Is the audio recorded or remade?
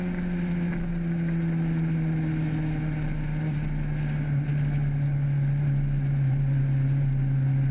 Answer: recorded